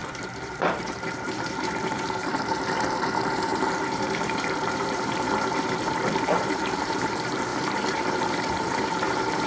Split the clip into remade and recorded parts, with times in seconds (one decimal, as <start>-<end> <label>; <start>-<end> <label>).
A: 0.0-9.5 remade